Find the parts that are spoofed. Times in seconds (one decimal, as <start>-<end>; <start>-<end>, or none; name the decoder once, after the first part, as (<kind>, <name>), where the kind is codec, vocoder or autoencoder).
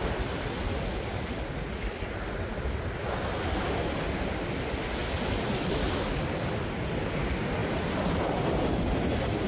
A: none